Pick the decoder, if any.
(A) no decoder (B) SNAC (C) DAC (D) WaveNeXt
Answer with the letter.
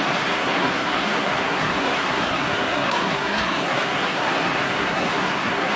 B